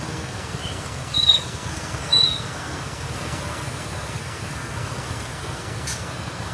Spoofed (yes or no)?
yes